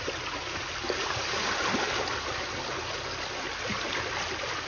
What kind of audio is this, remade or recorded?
recorded